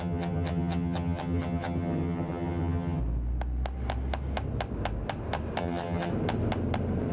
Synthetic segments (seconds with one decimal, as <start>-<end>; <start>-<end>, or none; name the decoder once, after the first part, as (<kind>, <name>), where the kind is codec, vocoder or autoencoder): 0.0-3.0 (vocoder, HiFi-GAN); 5.6-6.1